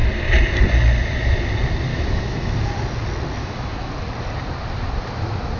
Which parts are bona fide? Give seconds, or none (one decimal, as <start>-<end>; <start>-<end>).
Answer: 0.0-1.9; 2.5-3.4; 3.9-5.6